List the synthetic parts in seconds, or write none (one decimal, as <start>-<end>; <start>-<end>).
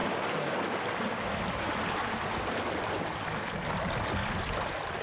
none